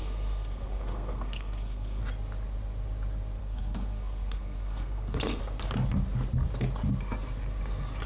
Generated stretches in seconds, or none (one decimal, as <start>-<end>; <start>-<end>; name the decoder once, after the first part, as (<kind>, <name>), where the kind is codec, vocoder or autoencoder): 0.0-2.0 (codec, SNAC); 3.4-5.4